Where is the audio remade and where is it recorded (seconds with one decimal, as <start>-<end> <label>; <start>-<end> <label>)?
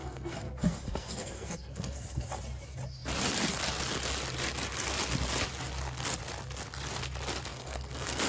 0.0-2.3 remade; 2.3-7.5 recorded; 7.5-8.3 remade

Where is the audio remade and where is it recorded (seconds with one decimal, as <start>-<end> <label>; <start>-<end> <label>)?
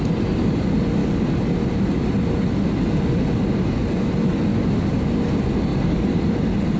0.0-6.8 recorded